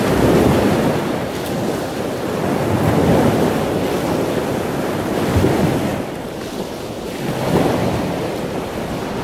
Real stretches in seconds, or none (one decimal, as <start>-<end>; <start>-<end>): 0.0-9.2